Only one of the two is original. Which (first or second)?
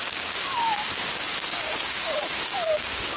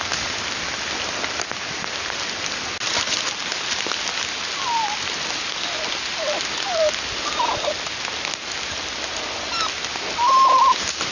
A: second